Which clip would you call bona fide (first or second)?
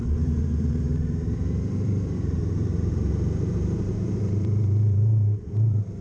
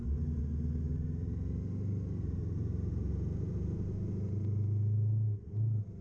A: second